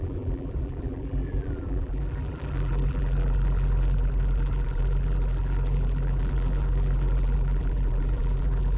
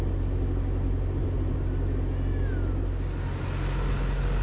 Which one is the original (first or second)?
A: second